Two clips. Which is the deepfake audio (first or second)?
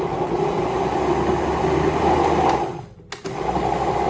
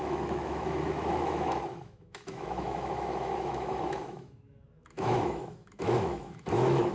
second